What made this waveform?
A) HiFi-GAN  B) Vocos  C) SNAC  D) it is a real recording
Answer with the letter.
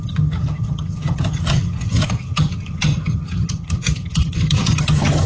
A